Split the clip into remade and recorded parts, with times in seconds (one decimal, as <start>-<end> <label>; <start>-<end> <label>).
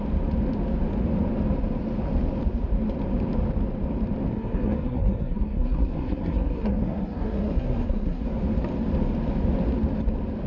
0.0-4.3 recorded; 4.3-8.2 remade; 8.2-10.5 recorded